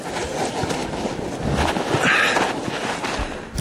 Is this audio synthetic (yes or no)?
no